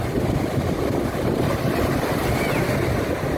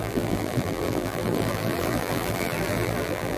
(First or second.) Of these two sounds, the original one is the first